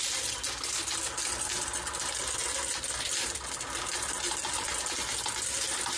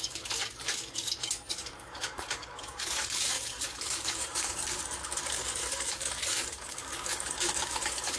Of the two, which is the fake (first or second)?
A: second